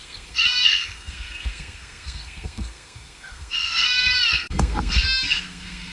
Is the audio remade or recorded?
remade